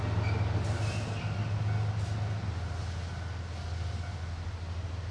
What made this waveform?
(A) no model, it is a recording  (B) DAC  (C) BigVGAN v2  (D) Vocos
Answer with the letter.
A